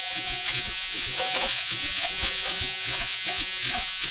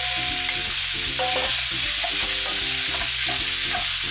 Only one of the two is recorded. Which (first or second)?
second